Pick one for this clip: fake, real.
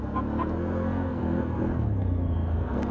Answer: fake